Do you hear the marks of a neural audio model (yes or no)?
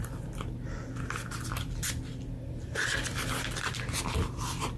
no